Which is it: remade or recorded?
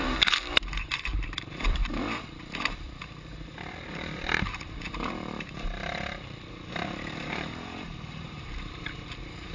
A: remade